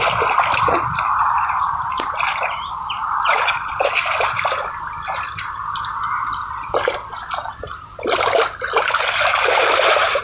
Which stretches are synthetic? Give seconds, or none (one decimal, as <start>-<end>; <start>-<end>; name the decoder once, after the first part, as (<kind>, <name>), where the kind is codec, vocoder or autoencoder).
1.2-4.7 (vocoder, BigVGAN v2); 9.3-10.2